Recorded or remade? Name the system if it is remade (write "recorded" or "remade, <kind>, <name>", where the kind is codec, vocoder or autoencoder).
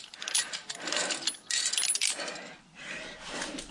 recorded